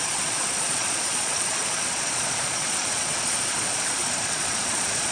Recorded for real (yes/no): no